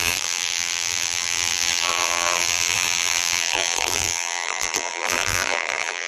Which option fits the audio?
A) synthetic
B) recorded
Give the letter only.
A